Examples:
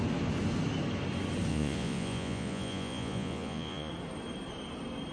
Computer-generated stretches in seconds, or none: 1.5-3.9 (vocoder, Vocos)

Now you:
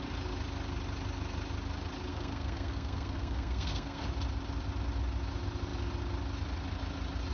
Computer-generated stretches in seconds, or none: 2.1-4.0 (codec, SNAC)

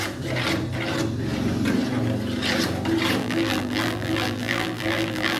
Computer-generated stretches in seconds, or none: 3.2-5.4 (vocoder, BigVGAN v2)

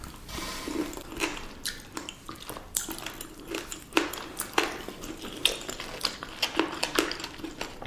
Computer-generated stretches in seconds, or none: none

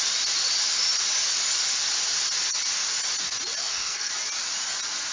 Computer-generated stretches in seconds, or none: 3.6-4.1 (codec, SNAC)